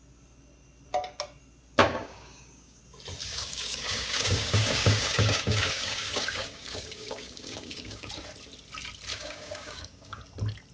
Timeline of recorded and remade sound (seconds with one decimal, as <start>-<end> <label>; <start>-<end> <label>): 0.0-1.8 recorded; 1.8-2.8 remade; 2.8-3.2 recorded; 3.2-8.1 remade; 8.1-9.1 recorded; 9.1-10.2 remade; 10.2-10.7 recorded